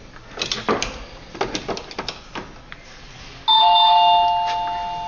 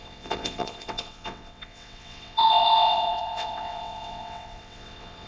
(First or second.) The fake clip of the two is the second